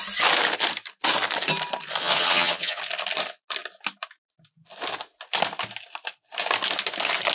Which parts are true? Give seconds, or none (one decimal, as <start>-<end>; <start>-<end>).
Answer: 0.0-2.0; 2.8-7.3